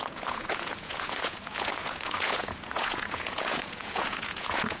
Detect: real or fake fake